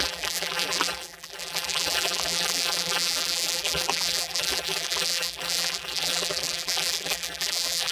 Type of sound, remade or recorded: remade